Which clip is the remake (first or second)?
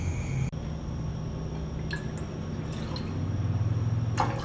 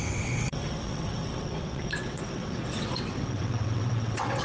second